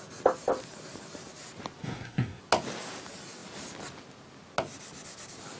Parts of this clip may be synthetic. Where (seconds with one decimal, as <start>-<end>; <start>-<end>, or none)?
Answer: 1.8-2.4